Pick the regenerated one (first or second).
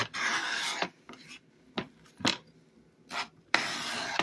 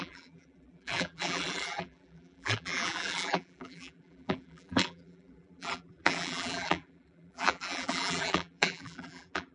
second